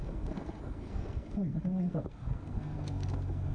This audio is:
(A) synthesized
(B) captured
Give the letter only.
A